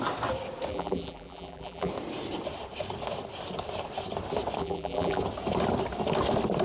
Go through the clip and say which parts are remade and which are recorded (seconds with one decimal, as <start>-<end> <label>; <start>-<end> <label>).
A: 0.0-0.7 recorded; 0.7-1.9 remade; 1.9-4.6 recorded; 4.6-5.2 remade; 5.2-6.6 recorded